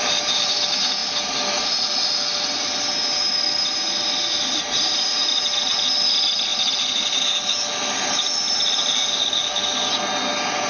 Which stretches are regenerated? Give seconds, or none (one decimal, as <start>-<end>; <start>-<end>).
none